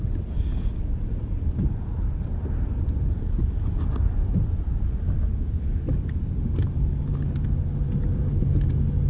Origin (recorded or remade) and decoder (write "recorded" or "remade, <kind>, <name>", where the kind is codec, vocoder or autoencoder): recorded